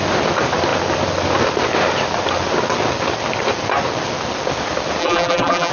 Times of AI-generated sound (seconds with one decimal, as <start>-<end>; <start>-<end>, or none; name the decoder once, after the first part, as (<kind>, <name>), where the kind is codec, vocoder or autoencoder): 5.0-5.7 (vocoder, BigVGAN v2)